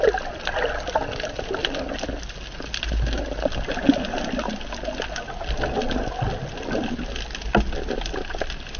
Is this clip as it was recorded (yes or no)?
yes